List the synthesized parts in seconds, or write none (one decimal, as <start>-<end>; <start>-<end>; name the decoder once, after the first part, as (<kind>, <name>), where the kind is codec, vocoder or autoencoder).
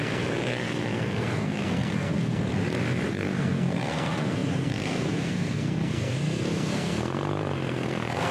0.0-2.5 (codec, SNAC); 3.1-8.3